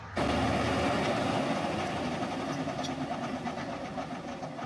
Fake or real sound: real